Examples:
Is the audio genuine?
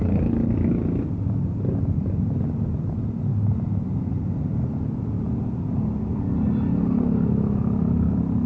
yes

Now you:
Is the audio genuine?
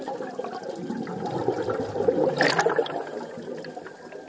yes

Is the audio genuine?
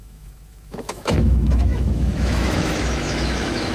no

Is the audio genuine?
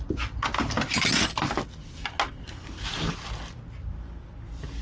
yes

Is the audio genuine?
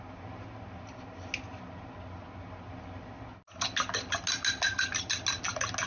yes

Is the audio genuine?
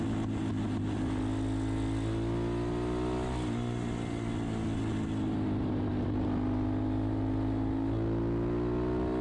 yes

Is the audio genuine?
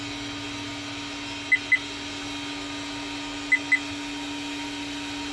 yes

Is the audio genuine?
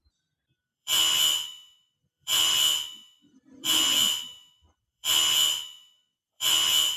no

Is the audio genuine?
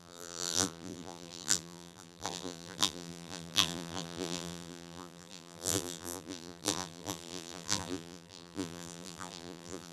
no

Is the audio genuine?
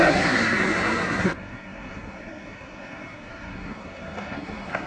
no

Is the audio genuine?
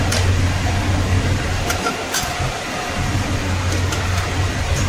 yes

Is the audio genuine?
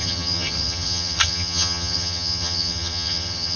no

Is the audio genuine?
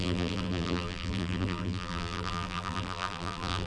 no